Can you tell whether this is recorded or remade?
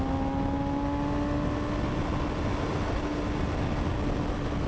recorded